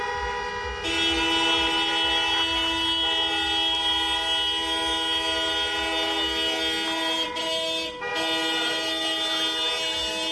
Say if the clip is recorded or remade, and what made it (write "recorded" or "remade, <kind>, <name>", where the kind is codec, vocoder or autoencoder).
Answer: recorded